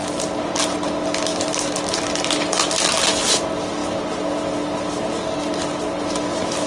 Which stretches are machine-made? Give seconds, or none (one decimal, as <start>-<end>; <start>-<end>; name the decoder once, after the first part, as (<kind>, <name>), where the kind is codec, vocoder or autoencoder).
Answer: none